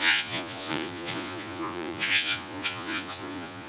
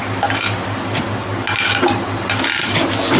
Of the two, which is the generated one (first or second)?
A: first